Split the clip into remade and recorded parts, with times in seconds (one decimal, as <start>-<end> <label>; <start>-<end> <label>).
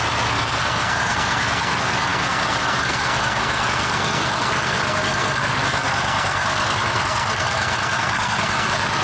0.0-9.0 remade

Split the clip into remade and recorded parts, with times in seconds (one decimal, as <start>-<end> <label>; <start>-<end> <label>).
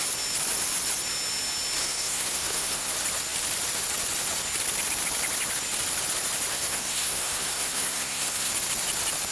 0.0-1.8 recorded; 1.8-2.9 remade; 2.9-6.5 recorded; 6.5-8.5 remade; 8.5-9.3 recorded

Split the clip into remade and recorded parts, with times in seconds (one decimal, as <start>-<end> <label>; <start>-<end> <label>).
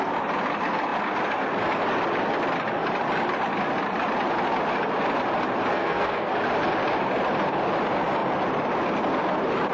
0.0-5.7 recorded; 5.7-6.3 remade; 6.3-9.7 recorded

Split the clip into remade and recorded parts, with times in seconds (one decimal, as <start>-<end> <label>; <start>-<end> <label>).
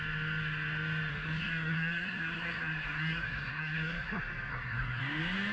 0.0-1.1 recorded; 1.1-4.1 remade; 4.1-4.5 recorded; 4.5-5.0 remade; 5.0-5.5 recorded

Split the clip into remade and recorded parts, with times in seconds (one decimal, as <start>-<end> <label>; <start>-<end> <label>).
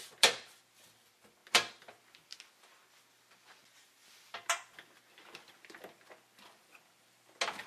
0.0-7.7 recorded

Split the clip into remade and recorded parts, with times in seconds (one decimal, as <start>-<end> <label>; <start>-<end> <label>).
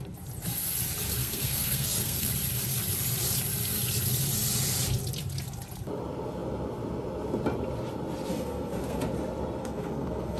0.0-1.2 recorded; 1.2-2.3 remade; 2.3-8.3 recorded; 8.3-9.0 remade; 9.0-9.6 recorded; 9.6-10.4 remade